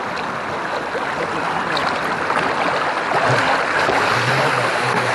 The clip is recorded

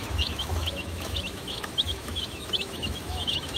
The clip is remade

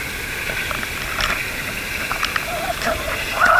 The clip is recorded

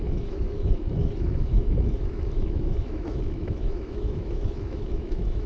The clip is remade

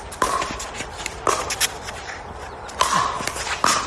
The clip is recorded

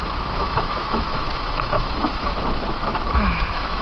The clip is remade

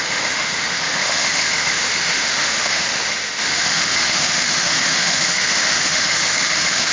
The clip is remade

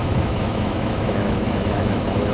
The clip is remade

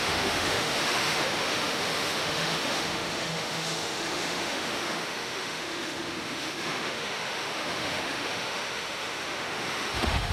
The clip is remade